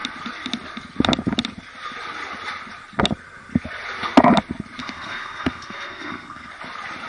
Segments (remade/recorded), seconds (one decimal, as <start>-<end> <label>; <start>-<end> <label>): 0.0-4.8 recorded; 4.8-6.5 remade; 6.5-7.1 recorded

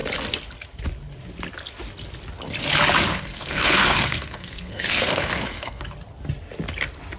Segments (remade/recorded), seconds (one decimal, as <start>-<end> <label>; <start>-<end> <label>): 0.0-3.1 recorded; 3.1-5.8 remade; 5.8-7.2 recorded

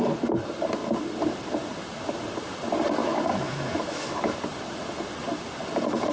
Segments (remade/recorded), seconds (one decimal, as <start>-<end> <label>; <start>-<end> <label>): 0.0-3.0 recorded; 3.0-4.3 remade; 4.3-6.1 recorded

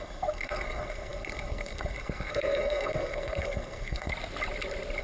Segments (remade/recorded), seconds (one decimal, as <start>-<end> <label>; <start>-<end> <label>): 0.0-4.1 remade; 4.1-5.0 recorded

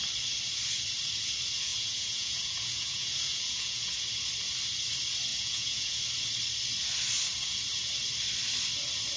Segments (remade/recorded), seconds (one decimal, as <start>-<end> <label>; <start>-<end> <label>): 0.0-1.7 recorded; 1.7-4.0 remade; 4.0-5.3 recorded; 5.3-6.0 remade; 6.0-9.2 recorded

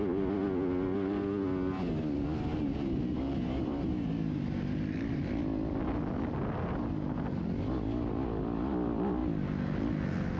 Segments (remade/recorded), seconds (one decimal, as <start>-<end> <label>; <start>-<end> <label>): 0.0-2.5 recorded; 2.5-5.2 remade; 5.2-10.4 recorded